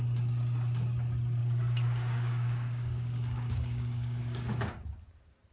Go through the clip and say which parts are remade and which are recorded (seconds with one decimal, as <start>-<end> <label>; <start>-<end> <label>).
0.0-1.4 recorded; 1.4-4.7 remade; 4.7-5.5 recorded